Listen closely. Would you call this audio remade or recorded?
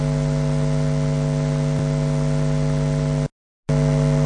recorded